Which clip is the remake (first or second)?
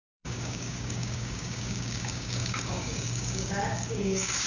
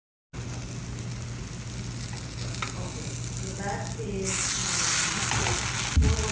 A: first